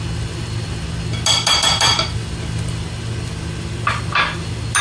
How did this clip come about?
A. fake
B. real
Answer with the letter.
B